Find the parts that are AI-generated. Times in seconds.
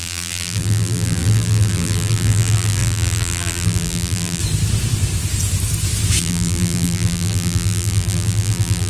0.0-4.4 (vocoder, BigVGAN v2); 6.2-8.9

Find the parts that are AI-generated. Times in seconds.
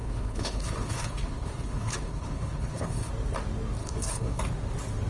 0.0-3.1 (codec, HILCodec); 3.8-4.4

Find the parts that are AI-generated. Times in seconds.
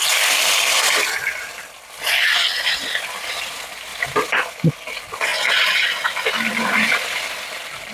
3.9-4.7 (vocoder, BigVGAN v2)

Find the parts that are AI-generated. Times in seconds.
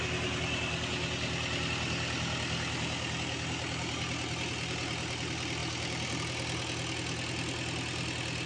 none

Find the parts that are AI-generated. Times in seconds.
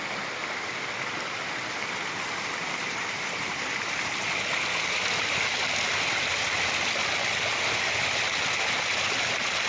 2.8-3.5 (vocoder, BigVGAN v2)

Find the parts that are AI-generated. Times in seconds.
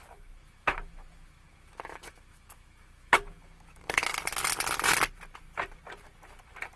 0.0-4.1 (autoencoder, DAC-VAE)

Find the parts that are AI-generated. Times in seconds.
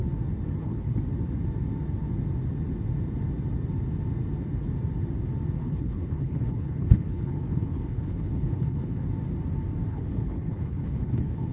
0.6-1.0 (codec, HILCodec); 5.6-9.0; 9.9-11.5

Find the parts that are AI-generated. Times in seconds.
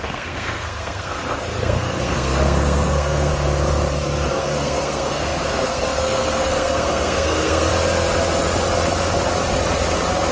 0.0-3.3 (codec, SNAC); 4.3-7.7